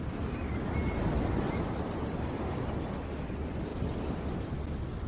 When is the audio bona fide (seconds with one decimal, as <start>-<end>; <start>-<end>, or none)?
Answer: 0.0-5.1